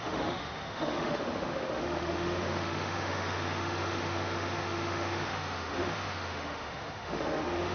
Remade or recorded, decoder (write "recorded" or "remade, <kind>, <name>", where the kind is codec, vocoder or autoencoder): remade, autoencoder, DAC-VAE